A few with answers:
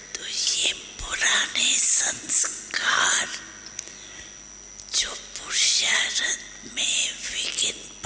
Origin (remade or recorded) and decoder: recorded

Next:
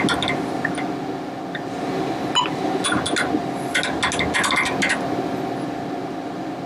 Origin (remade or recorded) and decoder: recorded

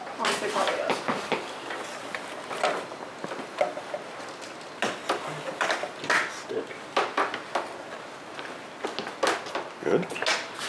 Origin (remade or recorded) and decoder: recorded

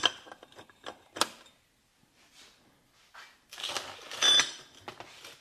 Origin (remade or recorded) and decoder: recorded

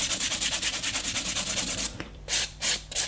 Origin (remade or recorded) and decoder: remade, vocoder, BigVGAN v2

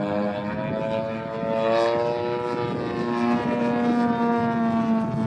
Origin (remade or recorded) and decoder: recorded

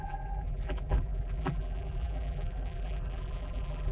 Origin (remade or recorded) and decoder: remade, vocoder, BigVGAN v2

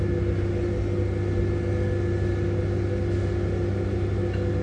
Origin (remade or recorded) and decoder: recorded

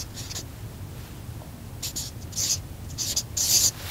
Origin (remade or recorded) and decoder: recorded